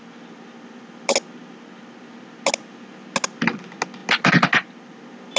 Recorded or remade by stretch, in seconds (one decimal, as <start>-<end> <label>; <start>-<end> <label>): 0.0-5.4 recorded

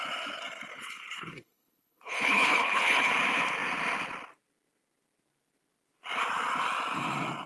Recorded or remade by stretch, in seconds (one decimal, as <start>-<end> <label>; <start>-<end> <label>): 0.0-0.7 recorded; 0.7-3.1 remade; 3.1-7.5 recorded